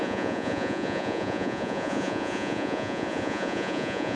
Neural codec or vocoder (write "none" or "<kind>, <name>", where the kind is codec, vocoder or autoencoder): vocoder, Vocos